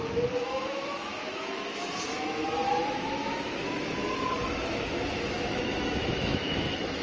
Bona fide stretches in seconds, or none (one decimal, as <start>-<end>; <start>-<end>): none